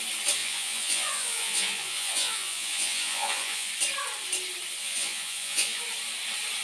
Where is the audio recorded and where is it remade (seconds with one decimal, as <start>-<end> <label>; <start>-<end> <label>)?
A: 0.0-0.4 recorded; 0.4-3.7 remade; 3.7-4.8 recorded; 4.8-5.8 remade; 5.8-6.6 recorded